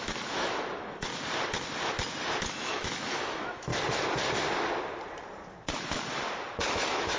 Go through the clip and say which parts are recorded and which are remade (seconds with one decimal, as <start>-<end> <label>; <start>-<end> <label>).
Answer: 0.0-1.1 remade; 1.1-2.5 recorded; 2.5-3.7 remade; 3.7-6.7 recorded; 6.7-7.2 remade